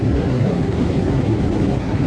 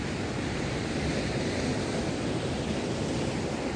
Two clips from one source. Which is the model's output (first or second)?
first